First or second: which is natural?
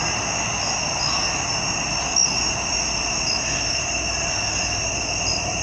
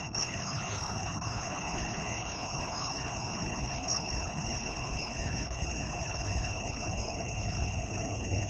first